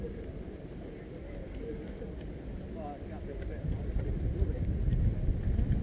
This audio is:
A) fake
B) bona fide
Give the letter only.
B